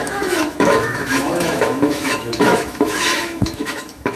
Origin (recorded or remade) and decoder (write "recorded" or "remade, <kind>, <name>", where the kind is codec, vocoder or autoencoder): remade, autoencoder, DAC-VAE